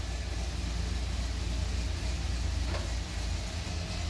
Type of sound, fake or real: real